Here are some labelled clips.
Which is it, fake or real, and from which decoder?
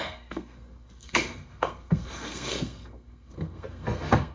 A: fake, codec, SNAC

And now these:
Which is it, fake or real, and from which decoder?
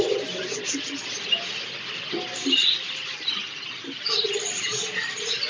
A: real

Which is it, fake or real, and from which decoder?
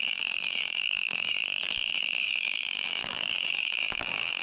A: fake, vocoder, BigVGAN v2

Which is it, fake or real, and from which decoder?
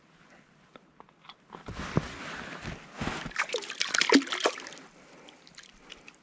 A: real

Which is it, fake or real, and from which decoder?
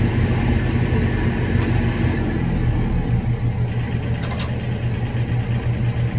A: real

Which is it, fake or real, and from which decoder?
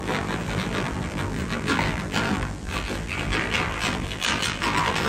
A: fake, vocoder, BigVGAN v2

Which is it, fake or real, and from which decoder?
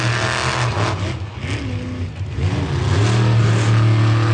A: real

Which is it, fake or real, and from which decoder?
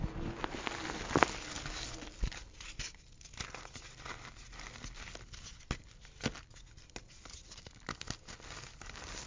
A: real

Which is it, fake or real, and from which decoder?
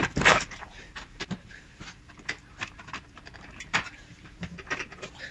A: fake, vocoder, BigVGAN v2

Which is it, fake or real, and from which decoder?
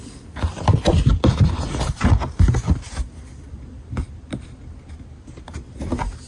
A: real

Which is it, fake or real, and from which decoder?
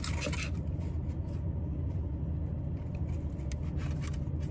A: real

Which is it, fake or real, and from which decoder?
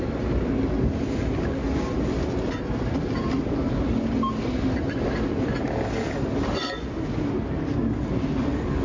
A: real